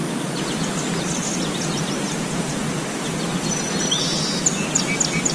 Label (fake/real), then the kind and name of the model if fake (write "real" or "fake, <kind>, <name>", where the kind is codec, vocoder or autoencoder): real